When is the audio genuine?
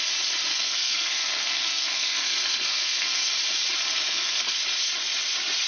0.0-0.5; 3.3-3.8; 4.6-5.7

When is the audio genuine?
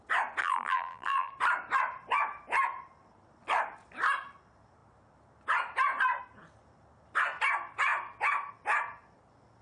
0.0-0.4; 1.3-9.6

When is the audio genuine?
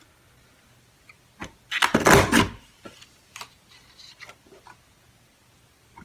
0.0-6.0